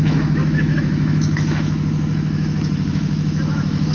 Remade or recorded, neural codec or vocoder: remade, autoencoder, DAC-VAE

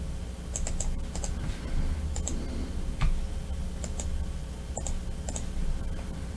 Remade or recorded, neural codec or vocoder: recorded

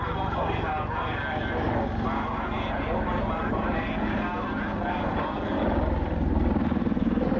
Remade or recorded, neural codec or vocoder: recorded